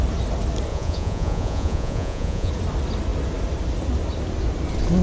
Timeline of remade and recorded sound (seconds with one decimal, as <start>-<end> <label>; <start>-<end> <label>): 0.0-0.7 recorded; 0.7-2.5 remade; 2.5-5.0 recorded